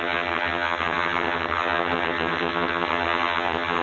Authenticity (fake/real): fake